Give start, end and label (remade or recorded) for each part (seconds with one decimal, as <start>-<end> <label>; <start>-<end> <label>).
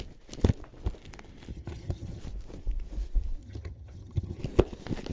0.0-1.5 recorded; 1.5-2.2 remade; 2.2-3.4 recorded; 3.4-4.4 remade; 4.4-5.1 recorded